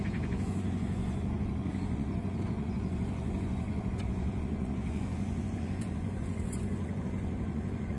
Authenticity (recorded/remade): remade